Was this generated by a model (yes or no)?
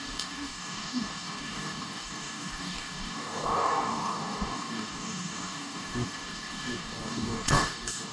yes